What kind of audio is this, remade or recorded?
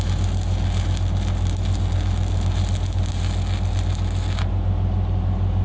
recorded